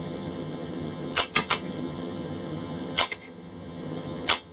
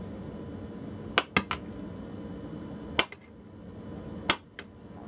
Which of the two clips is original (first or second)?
second